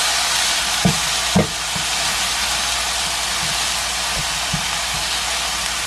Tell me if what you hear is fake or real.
real